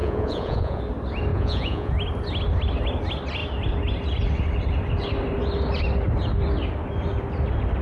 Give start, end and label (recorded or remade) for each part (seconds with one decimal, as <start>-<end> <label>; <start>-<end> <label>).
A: 0.0-0.8 remade; 0.8-1.3 recorded; 1.3-1.9 remade; 1.9-7.8 recorded